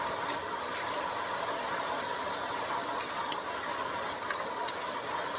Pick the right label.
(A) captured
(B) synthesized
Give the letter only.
A